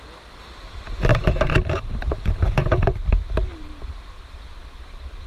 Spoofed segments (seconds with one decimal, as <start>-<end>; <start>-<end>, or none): 1.1-3.1